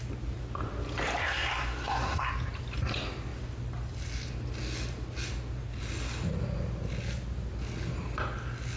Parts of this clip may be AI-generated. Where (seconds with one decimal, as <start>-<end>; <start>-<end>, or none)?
1.2-2.3